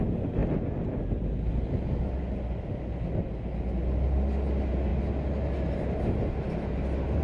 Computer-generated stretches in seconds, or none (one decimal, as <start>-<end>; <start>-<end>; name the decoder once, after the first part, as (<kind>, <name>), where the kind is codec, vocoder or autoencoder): none